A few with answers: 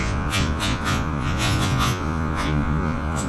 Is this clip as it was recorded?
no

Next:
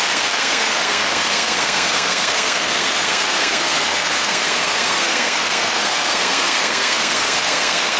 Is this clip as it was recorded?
no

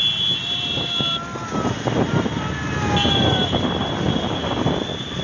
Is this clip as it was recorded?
yes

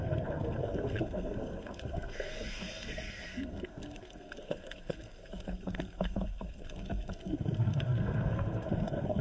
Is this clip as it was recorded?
no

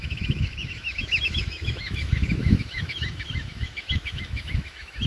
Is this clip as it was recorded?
no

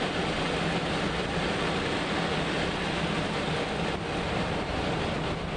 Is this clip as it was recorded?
yes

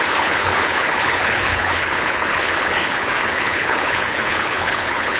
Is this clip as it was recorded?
no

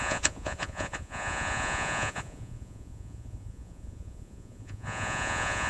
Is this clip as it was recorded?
no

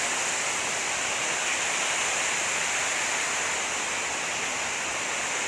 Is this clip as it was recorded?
yes